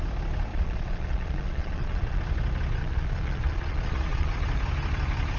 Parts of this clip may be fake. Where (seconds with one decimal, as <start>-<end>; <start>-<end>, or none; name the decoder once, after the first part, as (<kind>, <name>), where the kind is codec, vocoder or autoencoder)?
0.5-2.2 (vocoder, Vocos); 2.8-4.3